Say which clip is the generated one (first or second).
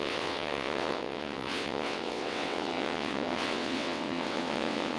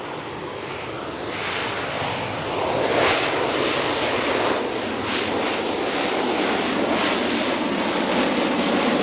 first